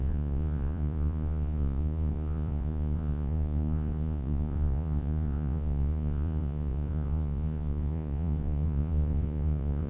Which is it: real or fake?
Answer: fake